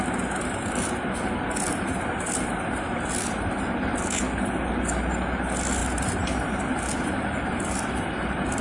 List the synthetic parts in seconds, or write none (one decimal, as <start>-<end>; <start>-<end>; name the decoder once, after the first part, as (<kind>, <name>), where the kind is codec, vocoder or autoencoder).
none